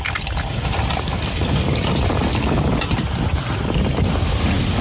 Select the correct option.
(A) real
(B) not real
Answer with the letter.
A